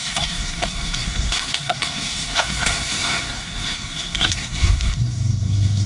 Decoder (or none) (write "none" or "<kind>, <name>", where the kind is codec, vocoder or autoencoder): codec, SNAC